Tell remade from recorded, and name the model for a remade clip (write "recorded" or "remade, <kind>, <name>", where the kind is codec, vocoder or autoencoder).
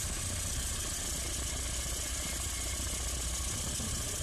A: recorded